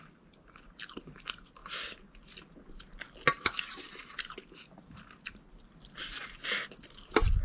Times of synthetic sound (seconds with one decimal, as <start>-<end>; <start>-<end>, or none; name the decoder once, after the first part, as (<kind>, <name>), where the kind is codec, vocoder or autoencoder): none